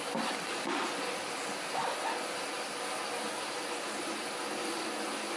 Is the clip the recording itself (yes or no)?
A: yes